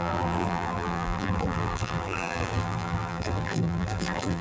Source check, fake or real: fake